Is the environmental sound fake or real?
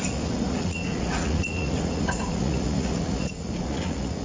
fake